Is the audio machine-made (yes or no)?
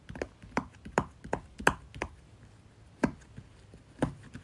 no